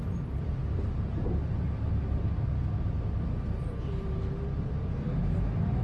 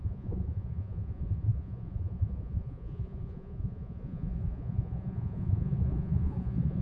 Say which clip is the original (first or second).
first